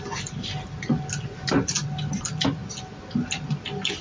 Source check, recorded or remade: recorded